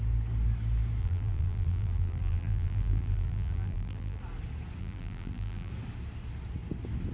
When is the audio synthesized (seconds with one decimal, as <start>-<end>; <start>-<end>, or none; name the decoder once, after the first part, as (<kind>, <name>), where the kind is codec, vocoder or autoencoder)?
1.0-4.2 (vocoder, BigVGAN v2); 4.8-5.7